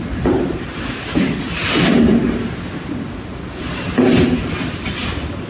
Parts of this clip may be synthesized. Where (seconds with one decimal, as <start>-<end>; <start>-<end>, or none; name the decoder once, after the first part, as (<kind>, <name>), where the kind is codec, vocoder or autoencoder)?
4.4-4.9 (vocoder, BigVGAN v2)